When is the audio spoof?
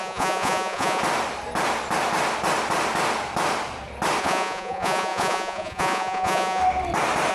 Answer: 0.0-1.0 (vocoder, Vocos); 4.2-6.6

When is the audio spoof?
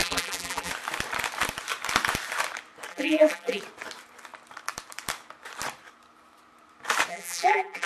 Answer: 0.0-0.7 (vocoder, BigVGAN v2); 2.9-3.6; 7.1-7.9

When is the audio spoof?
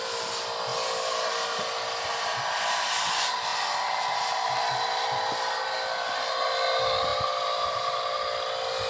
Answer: none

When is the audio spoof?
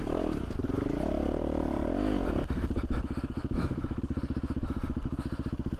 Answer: 3.4-4.0 (autoencoder, DAC-VAE)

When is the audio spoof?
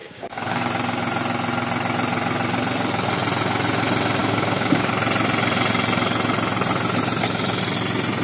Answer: 0.0-0.6 (codec, DAC); 4.2-4.9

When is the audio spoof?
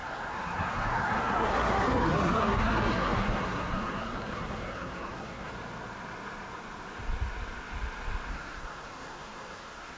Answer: 0.0-5.5 (codec, SNAC); 8.3-10.0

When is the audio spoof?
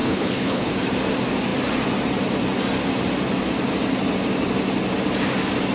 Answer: 0.0-0.7 (codec, HILCodec)